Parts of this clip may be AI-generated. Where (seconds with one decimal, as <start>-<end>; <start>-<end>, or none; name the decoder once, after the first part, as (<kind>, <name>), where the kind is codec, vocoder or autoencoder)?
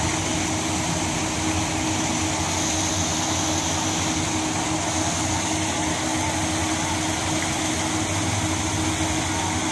none